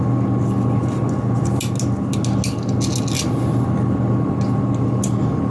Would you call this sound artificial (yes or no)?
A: no